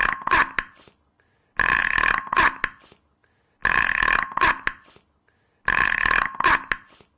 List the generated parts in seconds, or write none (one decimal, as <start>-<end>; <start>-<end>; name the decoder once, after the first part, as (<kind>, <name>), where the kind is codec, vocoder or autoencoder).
none